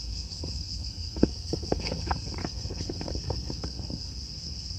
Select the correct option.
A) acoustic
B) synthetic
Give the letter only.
B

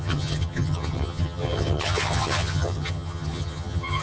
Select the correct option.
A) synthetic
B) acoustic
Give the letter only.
A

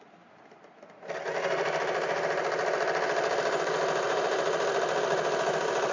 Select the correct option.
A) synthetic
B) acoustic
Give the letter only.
B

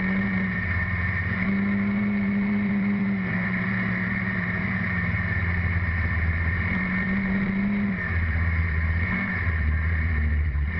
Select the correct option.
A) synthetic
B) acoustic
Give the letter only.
A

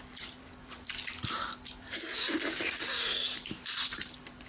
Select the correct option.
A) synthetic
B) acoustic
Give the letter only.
A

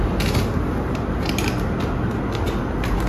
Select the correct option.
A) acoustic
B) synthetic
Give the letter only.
A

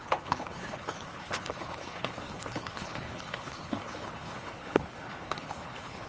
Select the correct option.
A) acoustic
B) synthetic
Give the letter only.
B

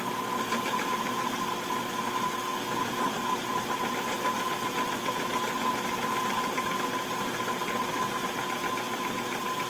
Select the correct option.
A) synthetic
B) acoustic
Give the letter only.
B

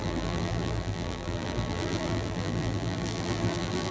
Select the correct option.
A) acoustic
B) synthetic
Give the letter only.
B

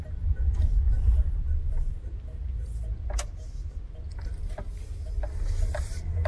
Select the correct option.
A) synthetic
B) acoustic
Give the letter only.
B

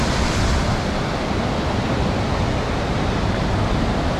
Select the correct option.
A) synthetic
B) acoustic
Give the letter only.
B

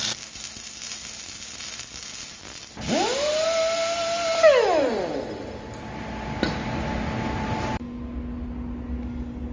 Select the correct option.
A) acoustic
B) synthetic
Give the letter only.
A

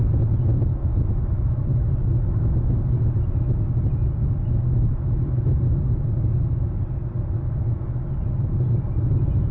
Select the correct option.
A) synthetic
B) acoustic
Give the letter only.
B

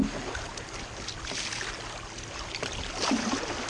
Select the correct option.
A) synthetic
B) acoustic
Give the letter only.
B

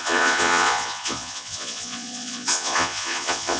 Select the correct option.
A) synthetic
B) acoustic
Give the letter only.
A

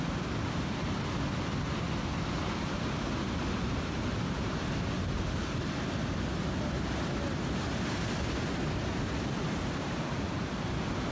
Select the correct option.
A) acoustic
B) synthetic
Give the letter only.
A